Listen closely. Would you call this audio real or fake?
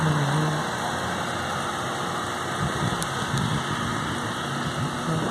real